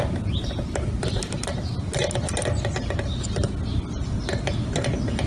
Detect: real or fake real